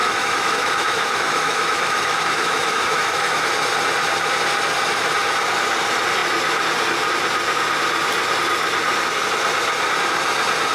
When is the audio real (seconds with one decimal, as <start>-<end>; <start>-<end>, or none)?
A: 3.5-10.7